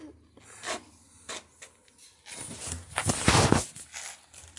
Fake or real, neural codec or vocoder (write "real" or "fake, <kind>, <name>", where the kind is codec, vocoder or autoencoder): real